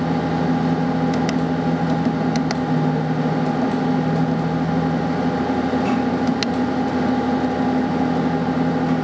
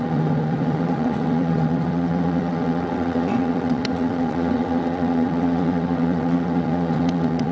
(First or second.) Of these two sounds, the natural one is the first